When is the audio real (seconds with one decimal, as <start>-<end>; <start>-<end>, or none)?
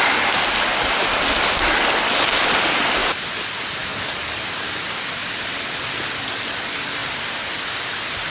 0.0-8.3